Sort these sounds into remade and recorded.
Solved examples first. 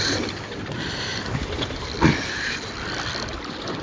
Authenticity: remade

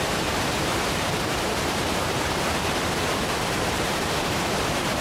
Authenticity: remade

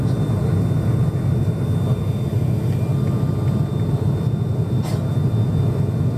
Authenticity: recorded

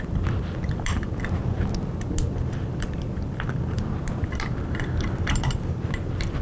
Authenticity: remade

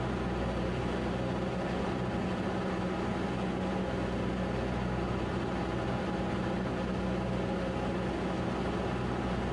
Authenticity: recorded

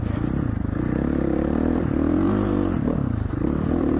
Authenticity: remade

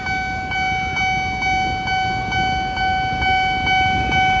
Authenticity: recorded